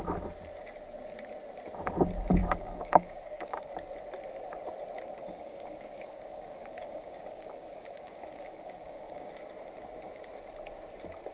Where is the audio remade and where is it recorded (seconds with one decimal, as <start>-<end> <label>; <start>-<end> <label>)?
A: 0.0-2.4 recorded; 2.4-3.7 remade; 3.7-5.2 recorded; 5.2-9.3 remade; 9.3-11.3 recorded